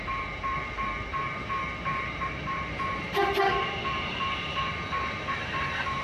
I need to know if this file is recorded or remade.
remade